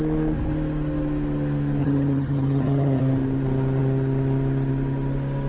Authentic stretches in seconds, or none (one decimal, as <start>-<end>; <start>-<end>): 0.0-1.8; 3.0-5.5